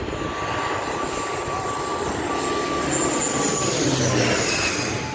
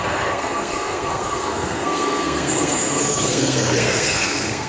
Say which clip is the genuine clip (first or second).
first